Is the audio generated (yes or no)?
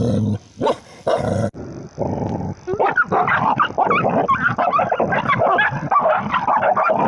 no